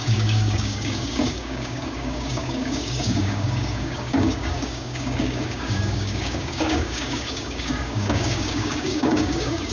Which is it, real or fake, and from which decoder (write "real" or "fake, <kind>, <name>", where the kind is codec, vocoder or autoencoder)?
fake, codec, DAC